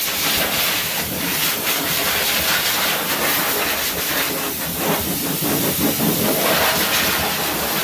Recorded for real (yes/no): yes